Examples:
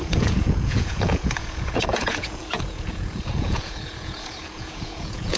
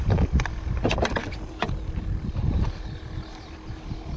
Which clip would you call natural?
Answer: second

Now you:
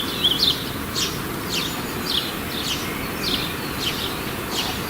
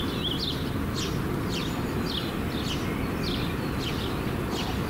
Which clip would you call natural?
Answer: second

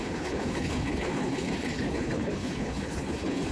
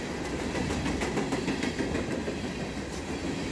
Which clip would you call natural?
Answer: second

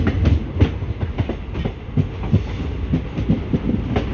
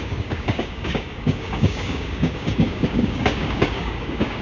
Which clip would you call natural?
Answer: first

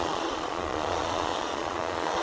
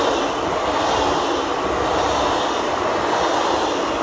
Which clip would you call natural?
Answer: second